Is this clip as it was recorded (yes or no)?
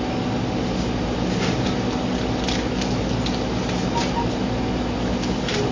yes